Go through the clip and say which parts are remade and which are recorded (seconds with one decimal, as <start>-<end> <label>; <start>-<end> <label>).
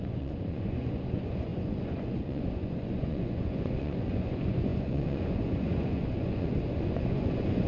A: 0.0-7.7 remade